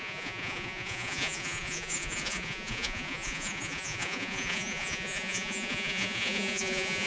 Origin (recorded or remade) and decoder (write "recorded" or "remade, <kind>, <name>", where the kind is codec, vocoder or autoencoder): remade, vocoder, Vocos